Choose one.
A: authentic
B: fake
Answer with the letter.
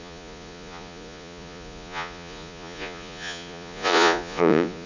B